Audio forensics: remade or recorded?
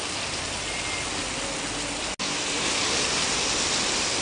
recorded